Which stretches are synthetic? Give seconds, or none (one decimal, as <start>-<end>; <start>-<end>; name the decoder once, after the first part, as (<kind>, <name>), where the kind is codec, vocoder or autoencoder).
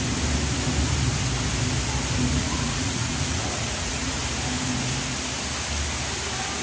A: 2.4-4.2 (vocoder, Vocos)